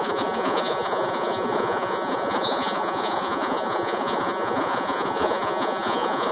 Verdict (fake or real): fake